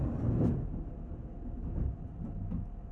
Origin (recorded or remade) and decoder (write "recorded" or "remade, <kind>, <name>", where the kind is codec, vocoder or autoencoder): recorded